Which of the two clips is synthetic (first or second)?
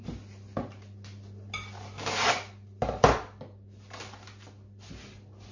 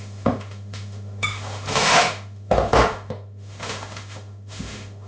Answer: second